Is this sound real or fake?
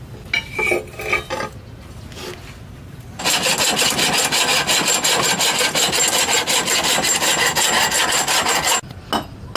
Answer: real